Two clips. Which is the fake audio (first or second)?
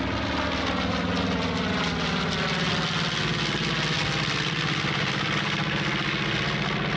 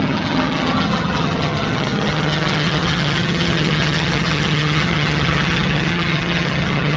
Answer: second